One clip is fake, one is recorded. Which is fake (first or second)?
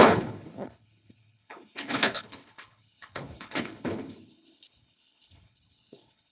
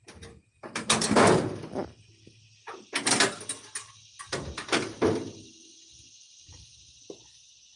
first